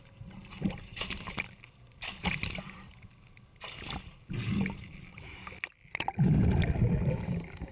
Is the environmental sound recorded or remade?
recorded